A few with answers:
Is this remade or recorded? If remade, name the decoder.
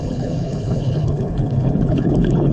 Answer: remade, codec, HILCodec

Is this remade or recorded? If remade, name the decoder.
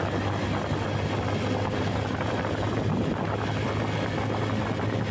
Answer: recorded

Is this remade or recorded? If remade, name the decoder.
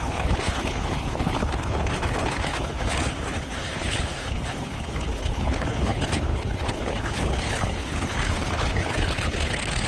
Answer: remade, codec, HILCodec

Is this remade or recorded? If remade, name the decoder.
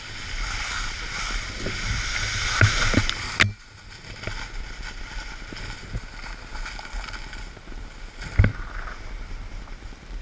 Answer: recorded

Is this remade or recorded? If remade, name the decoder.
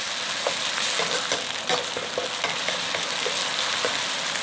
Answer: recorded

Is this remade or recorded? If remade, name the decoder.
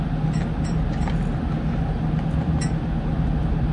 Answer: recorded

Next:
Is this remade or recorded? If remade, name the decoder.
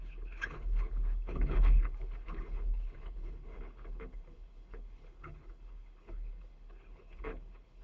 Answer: remade, codec, HILCodec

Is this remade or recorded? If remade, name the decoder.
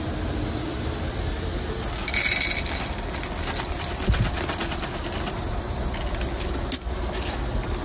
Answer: recorded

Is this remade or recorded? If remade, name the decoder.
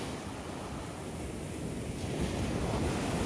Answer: recorded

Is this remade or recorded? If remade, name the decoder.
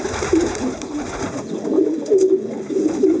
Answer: recorded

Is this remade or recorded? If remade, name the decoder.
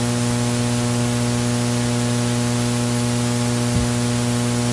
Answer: recorded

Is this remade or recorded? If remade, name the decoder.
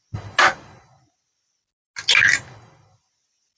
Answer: recorded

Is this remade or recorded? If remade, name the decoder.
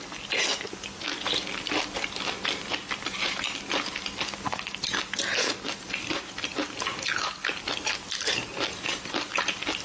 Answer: recorded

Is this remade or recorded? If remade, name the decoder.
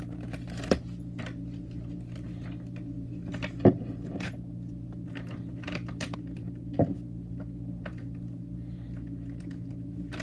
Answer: recorded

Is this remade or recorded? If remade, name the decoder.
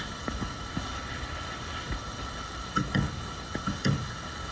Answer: remade, codec, HILCodec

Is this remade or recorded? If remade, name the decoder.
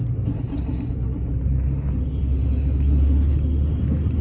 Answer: recorded